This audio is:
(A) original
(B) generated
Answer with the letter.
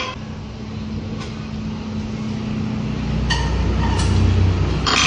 A